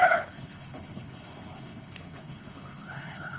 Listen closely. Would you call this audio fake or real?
fake